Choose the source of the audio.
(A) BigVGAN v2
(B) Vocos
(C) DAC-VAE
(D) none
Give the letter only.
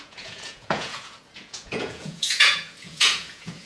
B